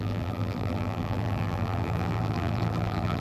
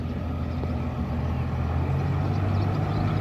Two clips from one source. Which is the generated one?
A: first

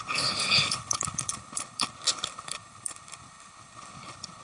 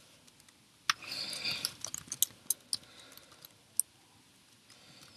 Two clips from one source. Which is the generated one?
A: first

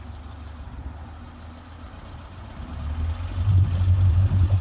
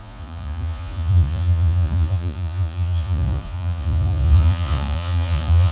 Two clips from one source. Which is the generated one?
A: second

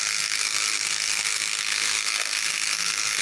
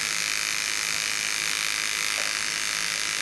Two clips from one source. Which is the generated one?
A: first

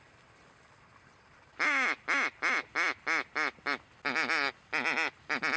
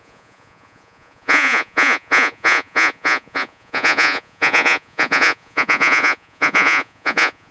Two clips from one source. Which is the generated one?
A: second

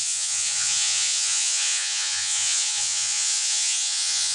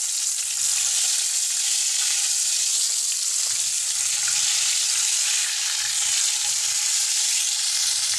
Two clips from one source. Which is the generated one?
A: first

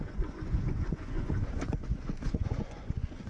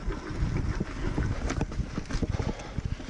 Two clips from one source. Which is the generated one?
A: first